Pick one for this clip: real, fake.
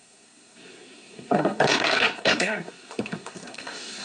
fake